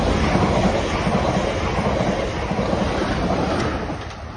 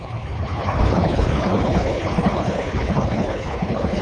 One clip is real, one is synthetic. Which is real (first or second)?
first